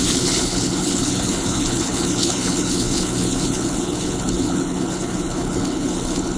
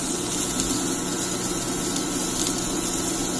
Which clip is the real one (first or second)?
second